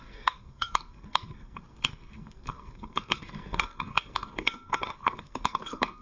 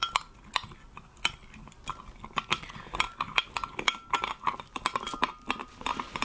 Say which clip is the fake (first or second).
first